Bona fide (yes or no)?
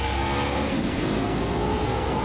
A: no